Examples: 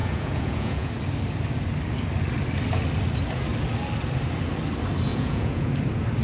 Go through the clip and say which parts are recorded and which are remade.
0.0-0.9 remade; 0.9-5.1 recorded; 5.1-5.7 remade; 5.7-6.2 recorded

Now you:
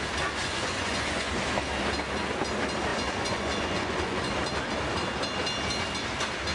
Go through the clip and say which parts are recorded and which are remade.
0.0-0.4 recorded; 0.4-1.4 remade; 1.4-2.9 recorded; 2.9-4.3 remade; 4.3-6.5 recorded

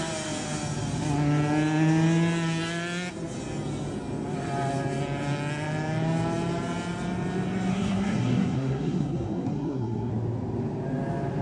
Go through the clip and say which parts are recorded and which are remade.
0.0-7.7 recorded; 7.7-10.1 remade; 10.1-11.4 recorded

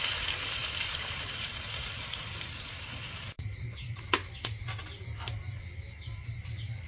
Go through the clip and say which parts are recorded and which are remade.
0.0-4.2 remade; 4.2-5.5 recorded; 5.5-6.9 remade